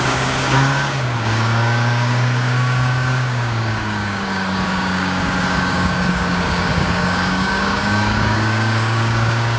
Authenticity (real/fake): fake